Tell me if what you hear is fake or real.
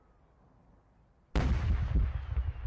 real